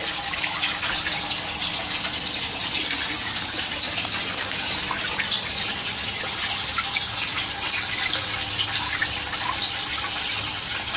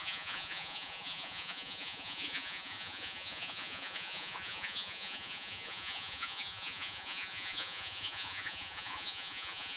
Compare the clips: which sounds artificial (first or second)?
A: second